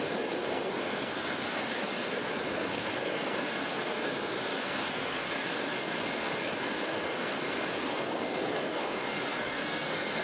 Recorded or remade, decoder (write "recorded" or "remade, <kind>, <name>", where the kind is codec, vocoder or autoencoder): remade, codec, SNAC